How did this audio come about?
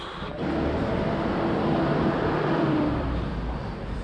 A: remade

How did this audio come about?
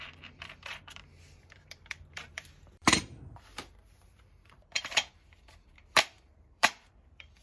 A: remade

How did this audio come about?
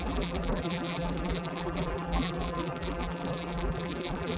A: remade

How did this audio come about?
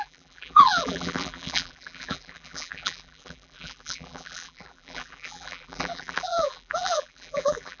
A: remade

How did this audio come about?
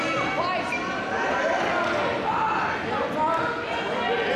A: recorded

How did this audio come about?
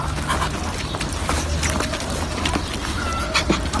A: recorded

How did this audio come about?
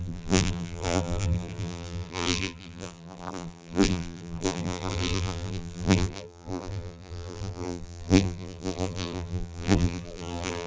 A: remade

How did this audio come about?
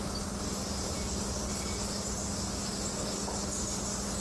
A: recorded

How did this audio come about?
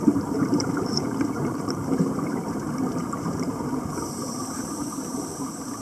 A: remade